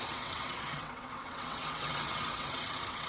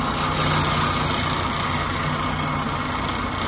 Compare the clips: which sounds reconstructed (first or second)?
first